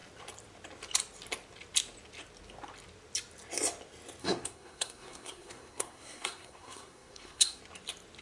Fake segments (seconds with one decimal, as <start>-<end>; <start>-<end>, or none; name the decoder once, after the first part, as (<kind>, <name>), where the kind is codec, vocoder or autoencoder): 4.2-7.6 (codec, SNAC)